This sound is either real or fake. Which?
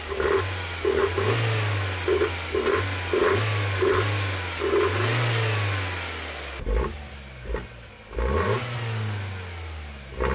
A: real